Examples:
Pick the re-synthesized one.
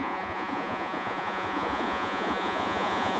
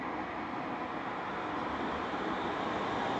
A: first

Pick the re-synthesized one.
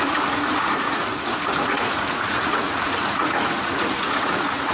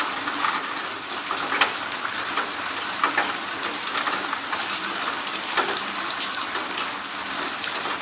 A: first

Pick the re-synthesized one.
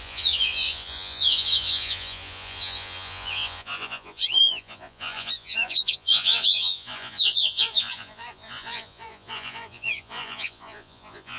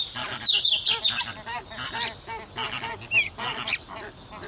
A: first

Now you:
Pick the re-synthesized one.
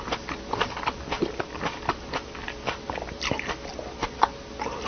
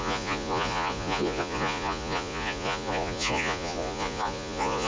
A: second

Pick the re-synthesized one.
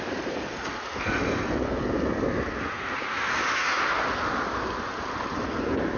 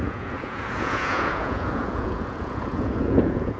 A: second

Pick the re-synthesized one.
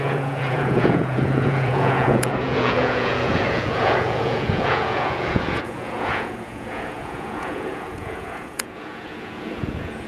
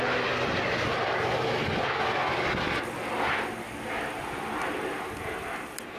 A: first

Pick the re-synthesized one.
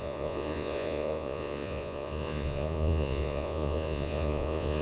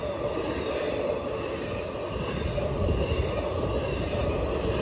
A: first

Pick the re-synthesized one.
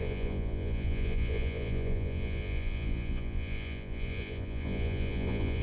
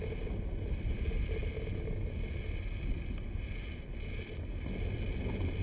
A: first